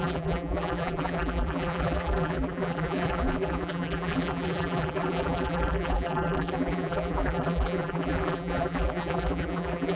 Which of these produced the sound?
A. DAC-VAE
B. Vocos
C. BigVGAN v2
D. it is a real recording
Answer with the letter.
C